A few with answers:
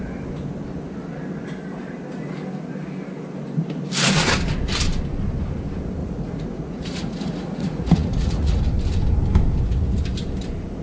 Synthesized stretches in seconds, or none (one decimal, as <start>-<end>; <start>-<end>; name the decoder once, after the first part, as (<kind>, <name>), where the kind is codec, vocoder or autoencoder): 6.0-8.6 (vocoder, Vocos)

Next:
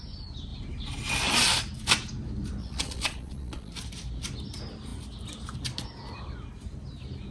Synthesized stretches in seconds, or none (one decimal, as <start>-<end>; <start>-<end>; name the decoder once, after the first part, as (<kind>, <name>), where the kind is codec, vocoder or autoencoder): 2.6-3.7 (vocoder, Vocos)

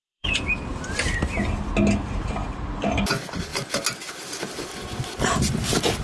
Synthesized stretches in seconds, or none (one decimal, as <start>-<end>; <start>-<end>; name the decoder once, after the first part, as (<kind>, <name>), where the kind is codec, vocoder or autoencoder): 0.0-0.5 (vocoder, Vocos)